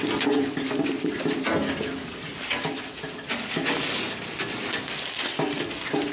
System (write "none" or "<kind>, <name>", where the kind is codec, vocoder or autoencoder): none